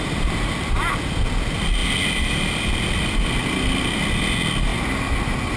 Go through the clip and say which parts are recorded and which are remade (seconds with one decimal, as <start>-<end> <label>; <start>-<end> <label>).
0.0-5.6 recorded